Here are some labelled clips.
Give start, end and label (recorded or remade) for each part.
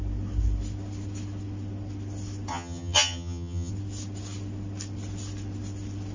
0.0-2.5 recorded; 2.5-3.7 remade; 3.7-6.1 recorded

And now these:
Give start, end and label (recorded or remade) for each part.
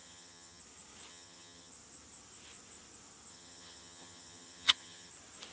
0.0-0.6 remade; 0.6-1.1 recorded; 1.1-1.7 remade; 1.7-3.3 recorded; 3.3-5.1 remade; 5.1-5.5 recorded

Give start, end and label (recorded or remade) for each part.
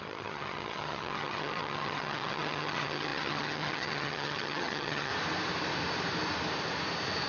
0.0-5.1 remade; 5.1-7.3 recorded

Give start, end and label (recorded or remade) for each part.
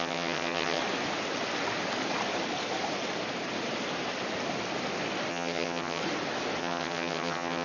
0.0-0.8 remade; 0.8-5.3 recorded; 5.3-6.0 remade; 6.0-6.6 recorded; 6.6-7.6 remade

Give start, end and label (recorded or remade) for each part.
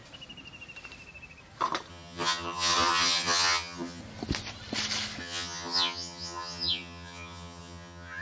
0.0-1.9 recorded; 1.9-4.0 remade; 4.0-5.2 recorded; 5.2-8.2 remade